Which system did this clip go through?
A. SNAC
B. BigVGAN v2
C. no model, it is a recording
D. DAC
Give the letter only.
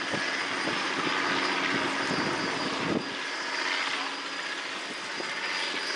C